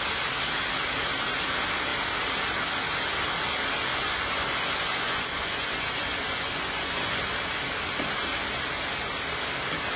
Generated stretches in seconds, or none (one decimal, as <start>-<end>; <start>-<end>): 3.9-7.2